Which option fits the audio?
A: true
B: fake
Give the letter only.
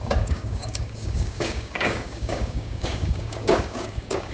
B